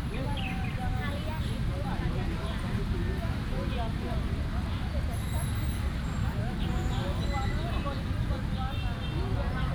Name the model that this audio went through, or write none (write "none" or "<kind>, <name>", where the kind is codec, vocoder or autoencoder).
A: none